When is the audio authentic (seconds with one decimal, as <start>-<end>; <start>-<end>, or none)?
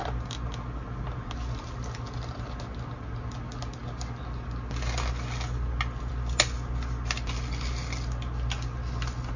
0.0-9.4